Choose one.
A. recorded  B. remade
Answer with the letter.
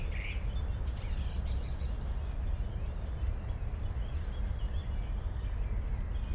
A